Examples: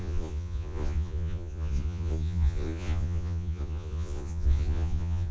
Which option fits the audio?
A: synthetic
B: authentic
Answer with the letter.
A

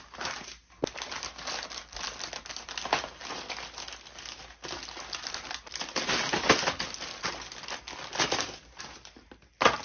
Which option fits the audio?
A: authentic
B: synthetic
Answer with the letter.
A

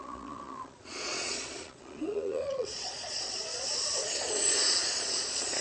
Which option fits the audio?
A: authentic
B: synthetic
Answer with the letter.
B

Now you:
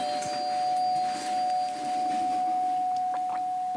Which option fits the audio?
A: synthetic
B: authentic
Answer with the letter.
B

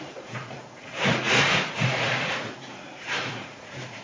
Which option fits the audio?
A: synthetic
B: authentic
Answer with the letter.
A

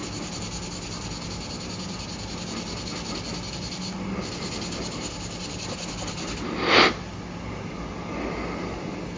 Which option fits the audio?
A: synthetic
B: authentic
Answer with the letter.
B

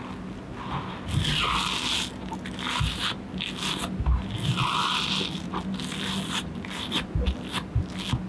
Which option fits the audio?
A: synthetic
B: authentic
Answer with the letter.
B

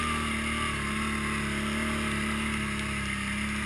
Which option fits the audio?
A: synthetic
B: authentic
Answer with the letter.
B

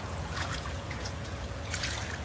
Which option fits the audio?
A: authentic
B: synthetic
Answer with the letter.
B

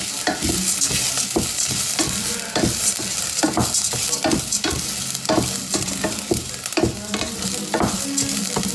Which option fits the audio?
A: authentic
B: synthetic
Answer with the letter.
A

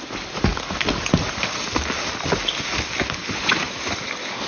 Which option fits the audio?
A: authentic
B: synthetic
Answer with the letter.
A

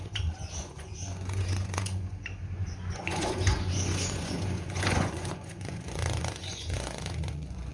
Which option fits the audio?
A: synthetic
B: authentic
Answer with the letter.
A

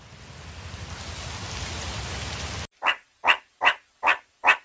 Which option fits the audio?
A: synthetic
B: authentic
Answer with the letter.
B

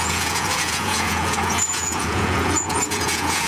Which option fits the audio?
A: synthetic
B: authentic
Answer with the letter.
A